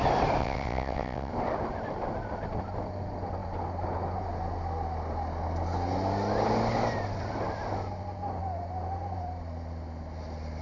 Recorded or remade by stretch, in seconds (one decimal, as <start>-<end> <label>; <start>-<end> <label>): 0.0-0.4 recorded; 0.4-1.3 remade; 1.3-10.6 recorded

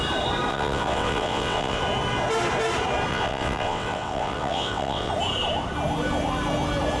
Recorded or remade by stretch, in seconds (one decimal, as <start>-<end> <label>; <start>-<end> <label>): 0.0-0.5 recorded; 0.5-1.8 remade; 1.8-3.1 recorded; 3.1-5.1 remade; 5.1-7.0 recorded

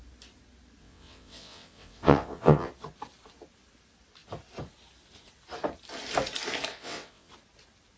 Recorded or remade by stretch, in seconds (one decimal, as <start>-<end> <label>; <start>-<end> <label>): 0.0-0.8 recorded; 0.8-2.7 remade; 2.7-6.7 recorded; 6.7-7.3 remade; 7.3-8.0 recorded

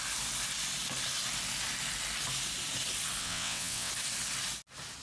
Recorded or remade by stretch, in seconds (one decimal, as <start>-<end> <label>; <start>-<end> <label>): 0.0-3.2 recorded; 3.2-3.9 remade; 3.9-5.0 recorded

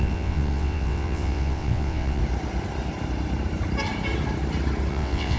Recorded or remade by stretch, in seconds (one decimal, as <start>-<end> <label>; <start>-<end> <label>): 0.0-2.2 remade; 2.2-4.9 recorded; 4.9-5.4 remade

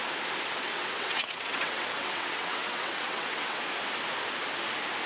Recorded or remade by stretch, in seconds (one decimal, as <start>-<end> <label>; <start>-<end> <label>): 0.0-0.7 recorded; 0.7-3.6 remade; 3.6-5.1 recorded

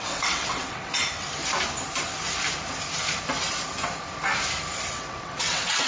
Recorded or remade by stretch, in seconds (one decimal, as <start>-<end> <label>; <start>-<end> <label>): 0.0-1.4 remade; 1.4-4.9 recorded; 4.9-5.9 remade